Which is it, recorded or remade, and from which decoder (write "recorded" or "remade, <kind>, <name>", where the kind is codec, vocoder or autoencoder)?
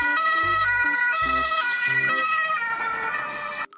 recorded